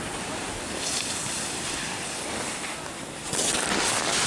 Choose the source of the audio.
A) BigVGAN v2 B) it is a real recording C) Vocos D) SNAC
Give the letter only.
B